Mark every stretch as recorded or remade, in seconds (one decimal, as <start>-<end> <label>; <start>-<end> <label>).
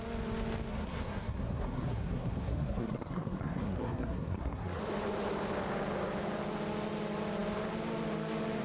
0.0-0.7 recorded; 0.7-4.8 remade; 4.8-8.6 recorded